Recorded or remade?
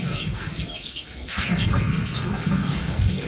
remade